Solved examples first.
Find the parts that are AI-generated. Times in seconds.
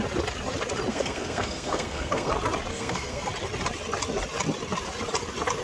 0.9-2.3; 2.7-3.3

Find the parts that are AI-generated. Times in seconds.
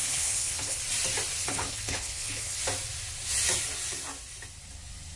0.0-0.8; 1.4-2.6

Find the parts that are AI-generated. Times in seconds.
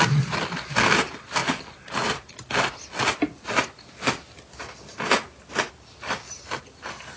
none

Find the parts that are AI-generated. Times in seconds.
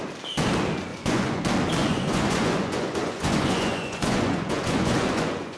0.9-1.4; 1.8-5.6